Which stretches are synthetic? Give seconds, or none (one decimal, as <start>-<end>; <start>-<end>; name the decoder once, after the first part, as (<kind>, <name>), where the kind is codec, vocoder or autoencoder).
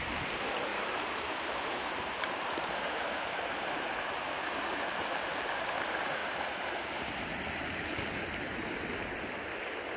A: 0.7-4.8 (vocoder, BigVGAN v2); 6.2-7.2; 8.1-8.7